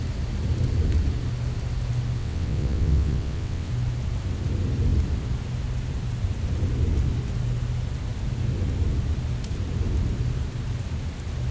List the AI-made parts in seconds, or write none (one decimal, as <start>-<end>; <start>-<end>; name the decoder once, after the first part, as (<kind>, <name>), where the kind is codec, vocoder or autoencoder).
2.2-3.7 (vocoder, WaveNeXt)